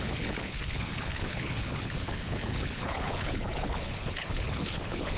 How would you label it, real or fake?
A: fake